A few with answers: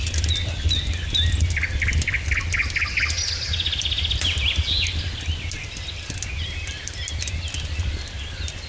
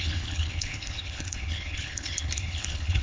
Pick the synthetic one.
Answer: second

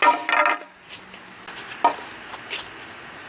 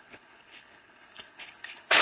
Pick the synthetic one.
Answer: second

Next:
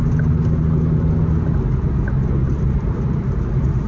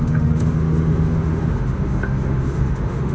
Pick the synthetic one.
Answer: second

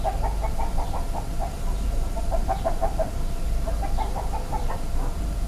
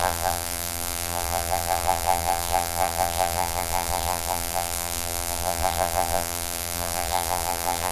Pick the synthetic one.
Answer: second